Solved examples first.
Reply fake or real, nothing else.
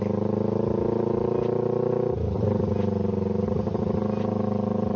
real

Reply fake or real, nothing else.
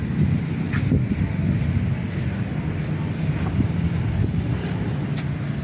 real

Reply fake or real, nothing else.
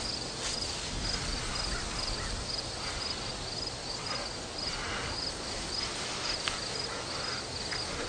real